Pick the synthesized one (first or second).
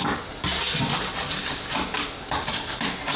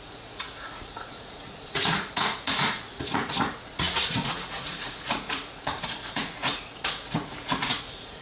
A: second